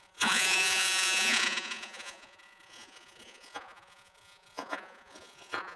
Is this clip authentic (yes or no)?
no